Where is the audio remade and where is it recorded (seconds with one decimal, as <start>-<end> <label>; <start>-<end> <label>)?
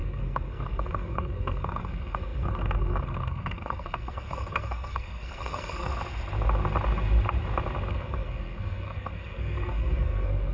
0.0-5.9 remade; 5.9-7.9 recorded; 7.9-10.5 remade